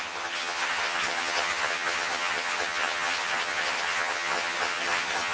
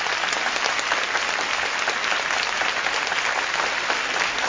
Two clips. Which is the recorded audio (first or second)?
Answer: second